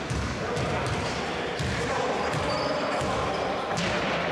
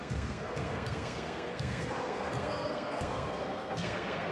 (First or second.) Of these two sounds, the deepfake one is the second